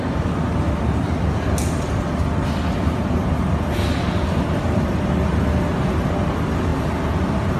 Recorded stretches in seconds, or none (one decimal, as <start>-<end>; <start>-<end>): 0.0-7.6